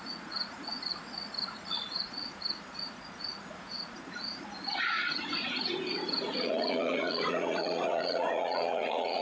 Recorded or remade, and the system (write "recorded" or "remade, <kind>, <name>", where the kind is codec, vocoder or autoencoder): remade, vocoder, Vocos